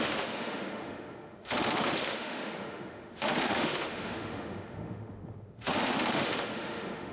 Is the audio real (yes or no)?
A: no